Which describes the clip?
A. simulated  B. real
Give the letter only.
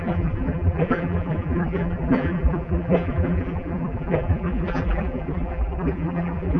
A